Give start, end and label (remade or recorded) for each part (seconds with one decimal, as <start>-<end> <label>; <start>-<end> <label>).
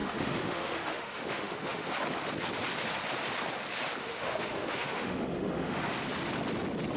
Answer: 0.0-1.9 remade; 1.9-4.0 recorded; 4.0-5.8 remade; 5.8-7.0 recorded